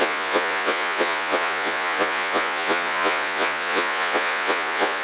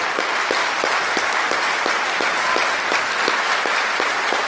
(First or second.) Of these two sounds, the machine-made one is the first